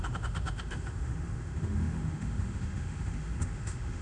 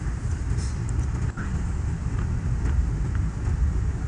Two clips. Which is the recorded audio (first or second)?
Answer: second